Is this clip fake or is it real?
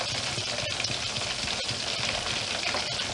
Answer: real